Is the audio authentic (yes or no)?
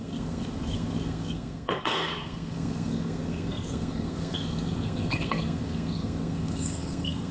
no